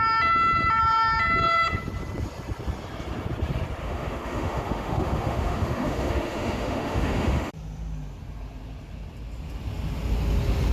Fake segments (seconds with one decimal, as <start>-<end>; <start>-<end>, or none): 3.8-7.5